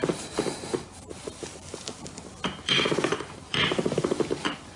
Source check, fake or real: fake